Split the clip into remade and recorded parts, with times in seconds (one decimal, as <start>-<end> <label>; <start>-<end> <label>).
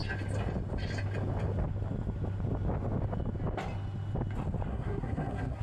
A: 0.0-4.7 recorded; 4.7-5.6 remade